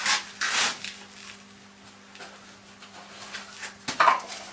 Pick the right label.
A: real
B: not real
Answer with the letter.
A